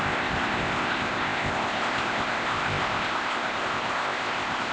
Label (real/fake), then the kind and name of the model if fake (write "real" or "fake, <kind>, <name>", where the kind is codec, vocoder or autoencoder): fake, codec, ZipCodec